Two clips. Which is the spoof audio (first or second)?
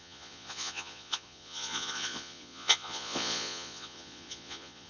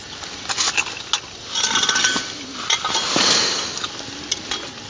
first